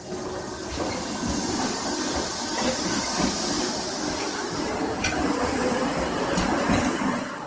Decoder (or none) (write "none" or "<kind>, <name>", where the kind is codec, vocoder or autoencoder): none